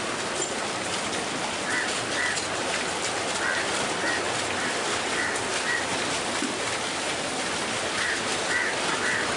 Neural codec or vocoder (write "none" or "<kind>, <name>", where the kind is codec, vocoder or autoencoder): vocoder, BigVGAN v2